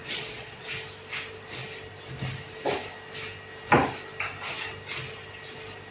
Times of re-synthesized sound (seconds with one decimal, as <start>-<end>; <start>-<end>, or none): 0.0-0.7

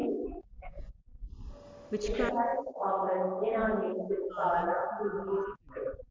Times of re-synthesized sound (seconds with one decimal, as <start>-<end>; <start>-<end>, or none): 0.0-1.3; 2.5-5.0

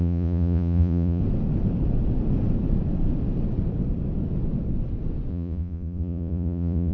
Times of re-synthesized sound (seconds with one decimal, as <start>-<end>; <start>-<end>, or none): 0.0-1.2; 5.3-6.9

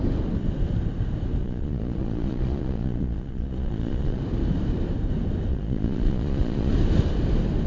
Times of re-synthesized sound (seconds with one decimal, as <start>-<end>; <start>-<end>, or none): 1.4-4.2; 5.5-6.7

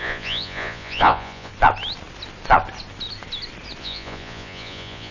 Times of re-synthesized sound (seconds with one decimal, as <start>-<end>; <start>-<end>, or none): 0.0-1.5; 3.8-5.1

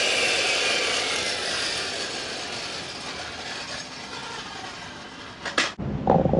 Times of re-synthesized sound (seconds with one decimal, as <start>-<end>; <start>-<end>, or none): none

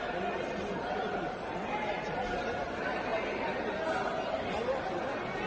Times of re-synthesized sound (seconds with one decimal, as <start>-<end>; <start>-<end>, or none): none